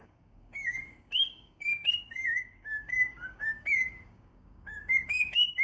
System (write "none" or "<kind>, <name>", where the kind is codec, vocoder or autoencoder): codec, DAC